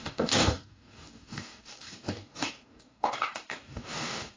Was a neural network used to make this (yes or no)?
yes